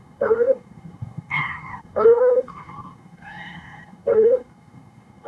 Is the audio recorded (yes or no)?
no